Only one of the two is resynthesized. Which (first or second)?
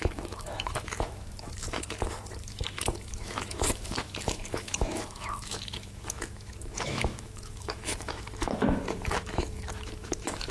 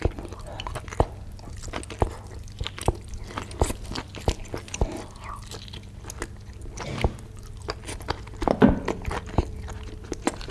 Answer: first